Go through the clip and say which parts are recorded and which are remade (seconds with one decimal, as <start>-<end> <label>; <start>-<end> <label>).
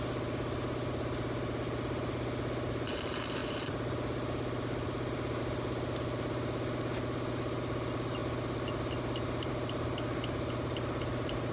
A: 0.0-11.5 recorded